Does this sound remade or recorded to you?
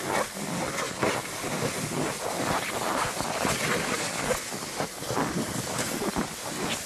recorded